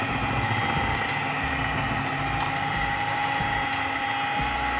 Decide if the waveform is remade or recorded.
recorded